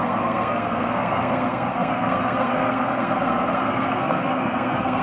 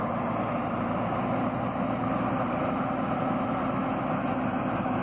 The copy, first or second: first